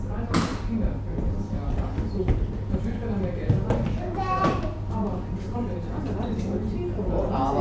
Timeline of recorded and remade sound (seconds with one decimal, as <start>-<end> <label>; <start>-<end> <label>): 0.0-7.6 recorded